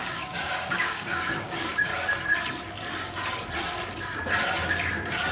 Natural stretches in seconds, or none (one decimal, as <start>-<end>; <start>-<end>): 1.9-5.3